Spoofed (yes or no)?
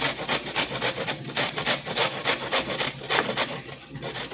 no